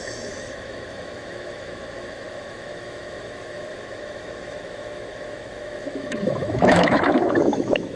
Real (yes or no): no